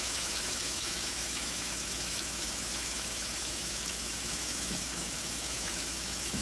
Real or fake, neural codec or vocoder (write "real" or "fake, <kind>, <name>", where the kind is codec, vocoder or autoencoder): fake, autoencoder, DAC-VAE